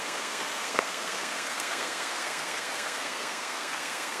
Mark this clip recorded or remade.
remade